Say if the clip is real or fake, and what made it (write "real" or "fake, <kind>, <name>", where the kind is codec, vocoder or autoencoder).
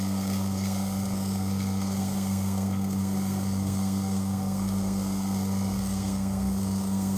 fake, codec, SNAC